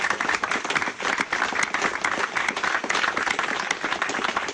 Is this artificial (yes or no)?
no